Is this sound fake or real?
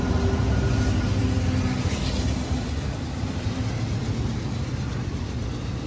real